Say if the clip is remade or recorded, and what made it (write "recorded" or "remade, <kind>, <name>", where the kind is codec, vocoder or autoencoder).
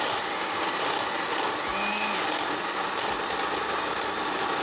recorded